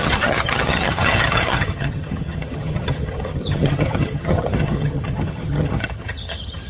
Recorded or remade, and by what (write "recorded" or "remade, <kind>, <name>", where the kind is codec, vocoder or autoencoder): remade, vocoder, HiFi-GAN